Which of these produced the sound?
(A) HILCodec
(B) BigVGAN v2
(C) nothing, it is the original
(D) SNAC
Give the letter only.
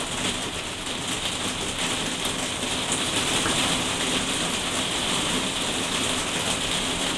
C